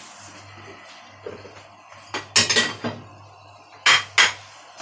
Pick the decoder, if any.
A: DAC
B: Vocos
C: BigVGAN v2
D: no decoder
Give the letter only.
D